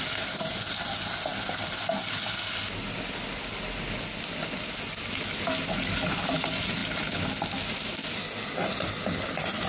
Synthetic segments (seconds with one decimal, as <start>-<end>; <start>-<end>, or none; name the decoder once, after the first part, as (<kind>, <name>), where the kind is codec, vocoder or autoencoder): none